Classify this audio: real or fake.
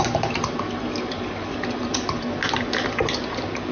real